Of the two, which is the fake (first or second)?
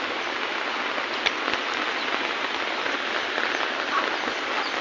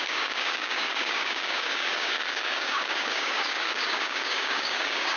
second